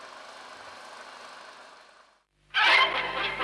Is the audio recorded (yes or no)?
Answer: yes